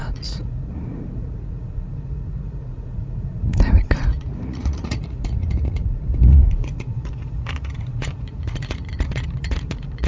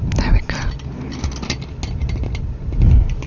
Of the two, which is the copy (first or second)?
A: first